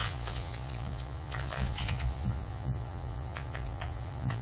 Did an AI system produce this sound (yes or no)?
yes